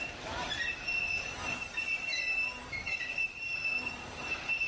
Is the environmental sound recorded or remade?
remade